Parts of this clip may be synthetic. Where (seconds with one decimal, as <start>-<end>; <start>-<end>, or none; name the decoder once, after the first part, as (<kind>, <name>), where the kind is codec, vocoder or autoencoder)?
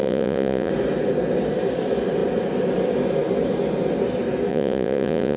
0.0-0.7 (vocoder, Vocos); 4.5-5.4